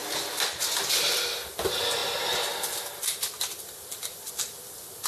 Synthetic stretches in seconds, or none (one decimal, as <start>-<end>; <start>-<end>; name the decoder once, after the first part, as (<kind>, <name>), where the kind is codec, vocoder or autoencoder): none